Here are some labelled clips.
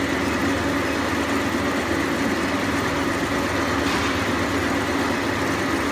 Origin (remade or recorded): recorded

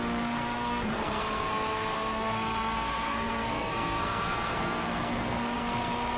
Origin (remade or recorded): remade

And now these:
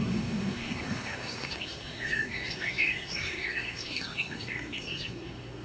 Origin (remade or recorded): remade